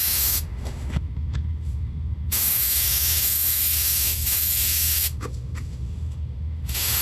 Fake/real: fake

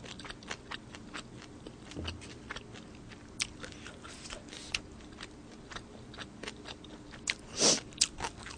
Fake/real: real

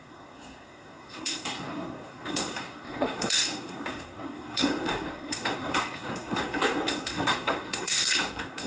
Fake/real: fake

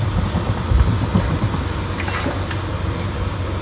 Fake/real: real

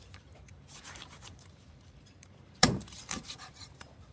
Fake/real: fake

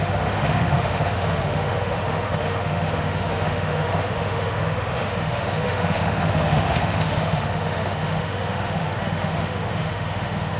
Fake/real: fake